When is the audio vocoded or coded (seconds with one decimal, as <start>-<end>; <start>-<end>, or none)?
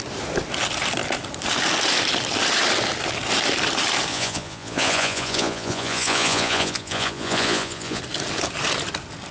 4.1-8.0